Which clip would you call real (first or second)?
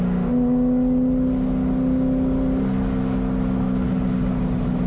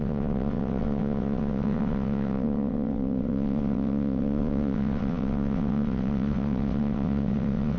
first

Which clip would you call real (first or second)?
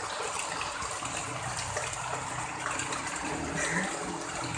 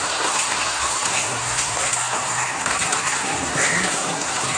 first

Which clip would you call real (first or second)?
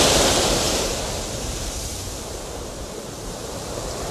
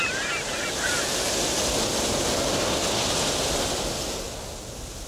second